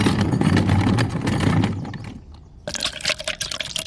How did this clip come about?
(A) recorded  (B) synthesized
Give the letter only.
A